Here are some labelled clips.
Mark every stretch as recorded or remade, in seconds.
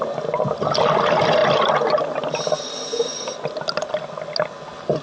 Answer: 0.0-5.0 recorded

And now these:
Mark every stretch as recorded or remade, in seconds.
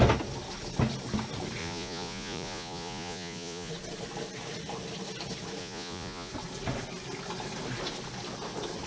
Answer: 0.0-1.6 recorded; 1.6-3.7 remade; 3.7-5.6 recorded; 5.6-6.3 remade; 6.3-8.9 recorded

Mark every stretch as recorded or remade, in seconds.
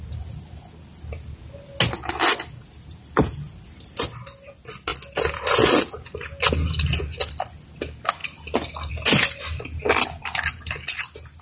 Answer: 0.0-11.4 recorded